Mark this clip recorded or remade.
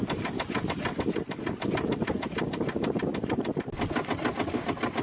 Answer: recorded